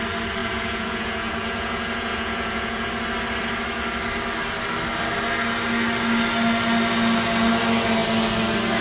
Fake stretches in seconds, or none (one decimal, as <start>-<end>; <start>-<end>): 0.4-2.9